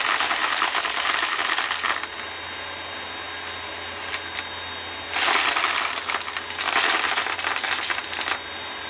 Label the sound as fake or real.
real